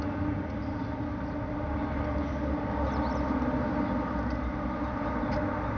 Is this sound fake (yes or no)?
no